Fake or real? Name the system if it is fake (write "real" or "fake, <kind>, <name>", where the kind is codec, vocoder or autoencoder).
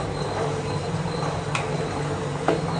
fake, vocoder, BigVGAN v2